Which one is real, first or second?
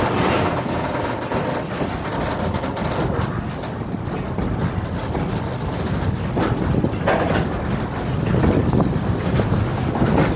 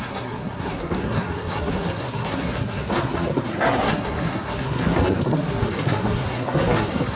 first